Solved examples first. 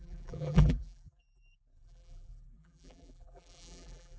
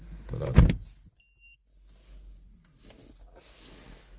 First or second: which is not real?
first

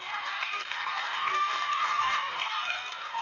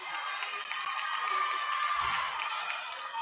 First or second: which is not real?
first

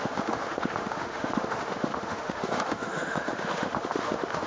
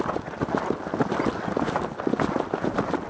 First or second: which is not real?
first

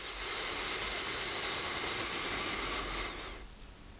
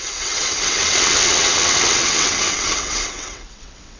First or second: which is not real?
second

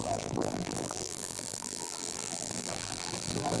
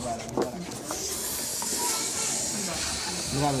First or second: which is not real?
first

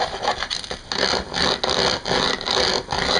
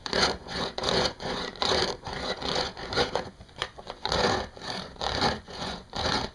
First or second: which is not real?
second